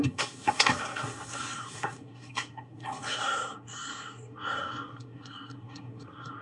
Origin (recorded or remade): remade